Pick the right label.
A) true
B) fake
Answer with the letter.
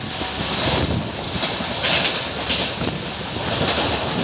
A